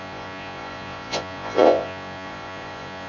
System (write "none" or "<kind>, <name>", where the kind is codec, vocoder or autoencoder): vocoder, Vocos